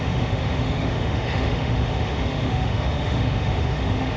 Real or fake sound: fake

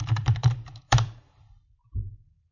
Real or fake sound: fake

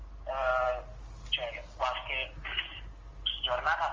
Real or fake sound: real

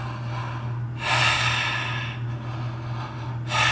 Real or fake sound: real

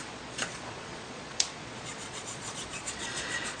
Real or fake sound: fake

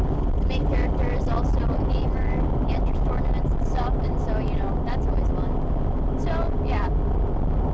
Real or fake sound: real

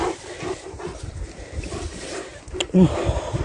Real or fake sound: real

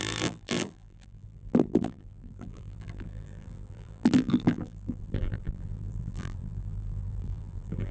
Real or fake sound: fake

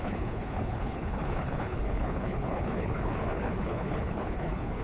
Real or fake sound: fake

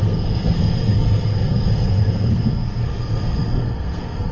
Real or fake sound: fake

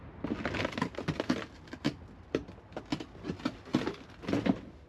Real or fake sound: real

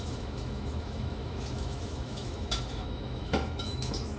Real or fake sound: fake